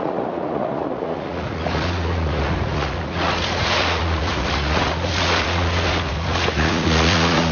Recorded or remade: remade